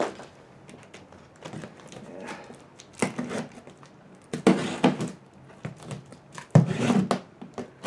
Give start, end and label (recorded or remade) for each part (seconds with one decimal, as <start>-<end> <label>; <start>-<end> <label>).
0.0-6.1 recorded; 6.1-7.0 remade; 7.0-7.9 recorded